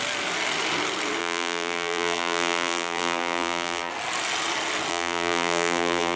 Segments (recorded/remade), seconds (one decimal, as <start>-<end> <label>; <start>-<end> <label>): 0.0-1.2 recorded; 1.2-3.9 remade; 3.9-4.9 recorded; 4.9-6.2 remade